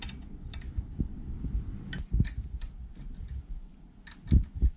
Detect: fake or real real